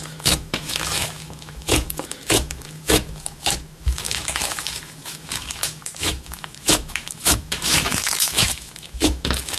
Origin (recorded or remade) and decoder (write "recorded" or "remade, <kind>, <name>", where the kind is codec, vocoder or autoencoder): remade, autoencoder, DAC-VAE